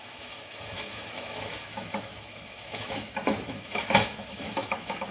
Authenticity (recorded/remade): remade